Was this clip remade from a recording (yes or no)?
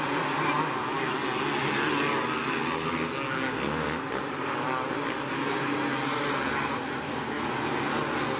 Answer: no